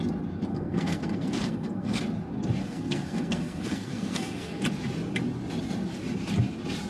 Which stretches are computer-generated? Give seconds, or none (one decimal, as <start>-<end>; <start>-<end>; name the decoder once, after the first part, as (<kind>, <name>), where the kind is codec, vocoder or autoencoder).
0.5-2.0 (codec, SNAC); 2.6-4.6